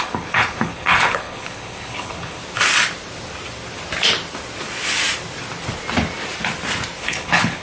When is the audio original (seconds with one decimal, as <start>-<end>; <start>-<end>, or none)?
2.4-7.0

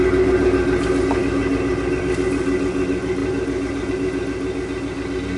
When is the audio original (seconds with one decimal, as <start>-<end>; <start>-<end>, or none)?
0.0-5.4

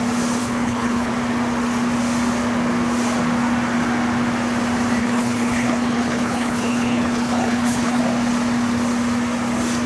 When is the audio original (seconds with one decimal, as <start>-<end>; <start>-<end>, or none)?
0.0-0.4; 1.1-5.0; 8.0-9.9

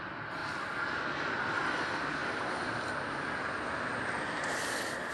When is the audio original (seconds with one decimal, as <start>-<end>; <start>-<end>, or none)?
0.0-5.1

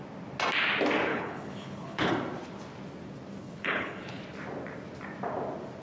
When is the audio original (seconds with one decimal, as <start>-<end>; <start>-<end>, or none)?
0.0-1.1; 2.1-3.4; 4.2-5.8

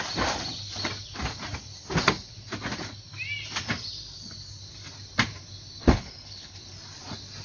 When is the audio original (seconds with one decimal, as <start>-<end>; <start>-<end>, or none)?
0.0-5.8; 6.6-7.4

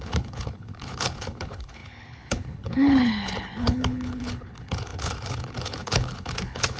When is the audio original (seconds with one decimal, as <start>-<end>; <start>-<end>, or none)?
none

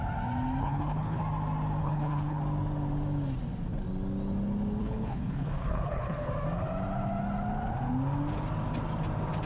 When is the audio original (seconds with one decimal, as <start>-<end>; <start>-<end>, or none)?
0.0-0.6; 1.2-1.8; 2.4-4.8; 6.3-9.5